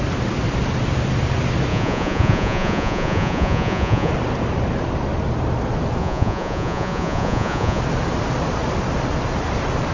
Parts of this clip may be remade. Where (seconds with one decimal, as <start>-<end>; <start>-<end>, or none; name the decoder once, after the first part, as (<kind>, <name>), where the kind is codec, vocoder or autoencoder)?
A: 1.7-4.1 (vocoder, Vocos); 6.0-7.8